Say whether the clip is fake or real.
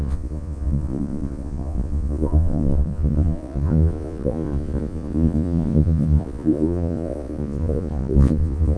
fake